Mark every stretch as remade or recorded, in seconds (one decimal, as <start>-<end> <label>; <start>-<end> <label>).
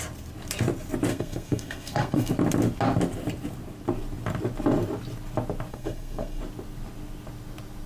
0.0-1.1 recorded; 1.1-2.3 remade; 2.3-5.7 recorded; 5.7-6.4 remade; 6.4-7.9 recorded